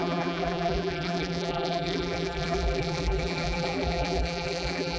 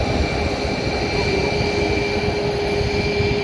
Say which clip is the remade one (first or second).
first